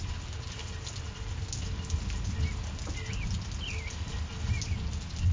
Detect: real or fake real